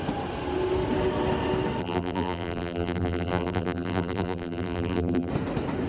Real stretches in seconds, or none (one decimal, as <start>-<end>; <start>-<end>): 0.0-1.8; 5.3-5.9